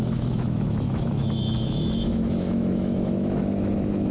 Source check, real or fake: fake